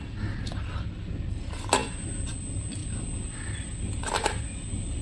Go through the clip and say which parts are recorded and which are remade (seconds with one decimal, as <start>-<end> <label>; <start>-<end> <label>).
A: 0.0-5.0 recorded